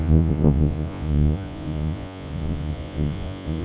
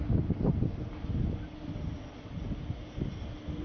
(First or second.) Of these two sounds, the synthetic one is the first